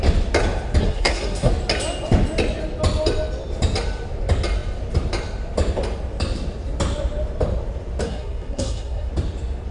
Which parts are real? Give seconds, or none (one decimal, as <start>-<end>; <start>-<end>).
0.0-0.8; 1.5-8.0; 9.1-9.7